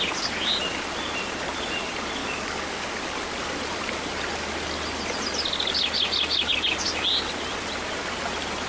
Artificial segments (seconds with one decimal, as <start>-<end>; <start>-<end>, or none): 2.2-2.9